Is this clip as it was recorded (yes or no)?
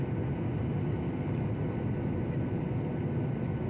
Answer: yes